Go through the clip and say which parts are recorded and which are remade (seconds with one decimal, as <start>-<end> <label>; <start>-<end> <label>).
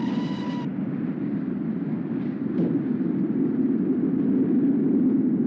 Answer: 0.0-5.5 recorded